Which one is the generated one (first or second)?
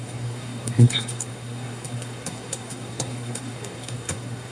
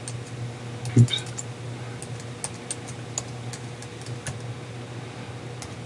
first